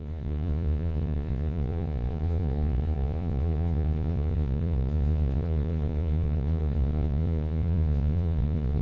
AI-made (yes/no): yes